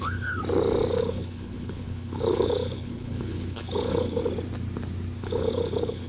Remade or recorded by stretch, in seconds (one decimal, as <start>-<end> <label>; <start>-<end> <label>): 0.0-0.4 remade; 0.4-1.0 recorded; 1.0-4.2 remade; 4.2-5.2 recorded; 5.2-6.1 remade